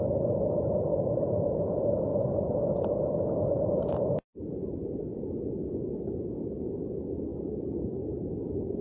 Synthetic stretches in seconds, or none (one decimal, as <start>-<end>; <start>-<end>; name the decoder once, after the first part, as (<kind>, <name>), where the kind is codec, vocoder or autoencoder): 0.0-8.8 (vocoder, BigVGAN v2)